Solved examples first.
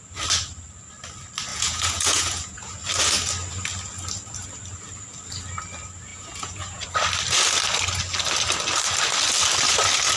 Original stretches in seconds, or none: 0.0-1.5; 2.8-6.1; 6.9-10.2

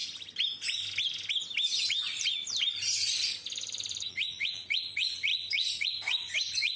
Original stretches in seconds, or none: 0.0-4.1

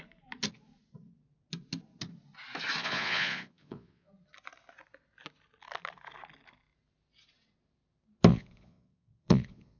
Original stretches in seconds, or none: 0.0-2.8; 4.1-8.3

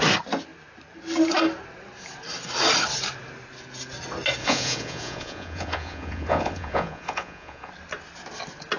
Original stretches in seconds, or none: 0.0-4.4; 7.7-8.8

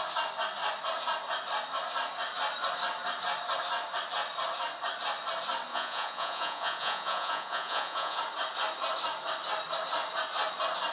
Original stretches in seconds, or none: 0.0-5.7; 8.2-10.9

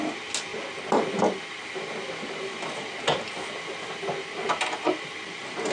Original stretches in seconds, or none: 0.0-5.7

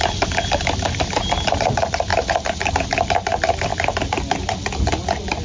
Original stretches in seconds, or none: 0.0-5.4